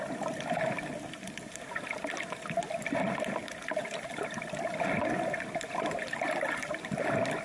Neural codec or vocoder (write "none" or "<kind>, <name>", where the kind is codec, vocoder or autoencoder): none